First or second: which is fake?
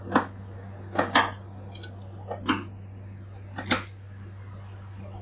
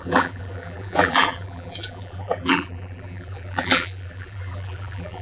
second